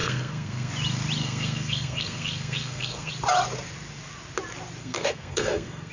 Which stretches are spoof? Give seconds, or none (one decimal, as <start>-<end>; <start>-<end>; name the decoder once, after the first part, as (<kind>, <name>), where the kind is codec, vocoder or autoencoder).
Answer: 0.0-0.7 (codec, SNAC); 1.2-3.1; 4.8-5.9